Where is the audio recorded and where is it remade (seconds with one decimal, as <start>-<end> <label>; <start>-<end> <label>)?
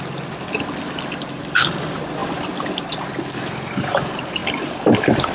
0.0-5.3 recorded